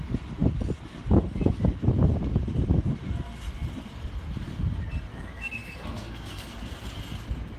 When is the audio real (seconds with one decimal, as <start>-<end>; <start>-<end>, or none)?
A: 0.0-5.1; 7.0-7.6